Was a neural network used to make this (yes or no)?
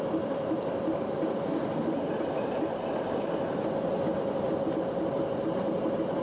no